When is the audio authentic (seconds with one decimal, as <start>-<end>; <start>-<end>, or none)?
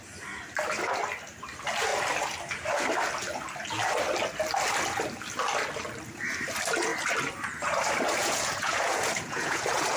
0.0-8.2